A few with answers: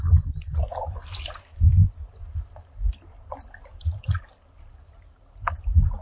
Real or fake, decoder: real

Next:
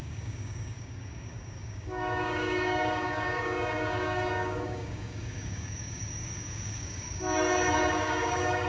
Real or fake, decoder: fake, codec, DAC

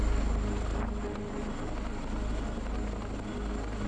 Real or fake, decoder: real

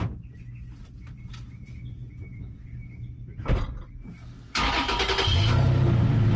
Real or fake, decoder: real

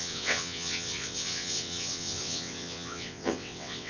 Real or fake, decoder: fake, vocoder, WaveNeXt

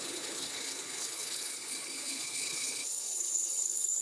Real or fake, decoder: fake, codec, HILCodec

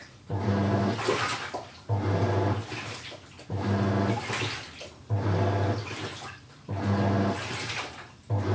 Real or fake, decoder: real